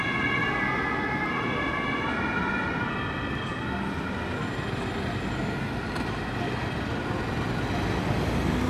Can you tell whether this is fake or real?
real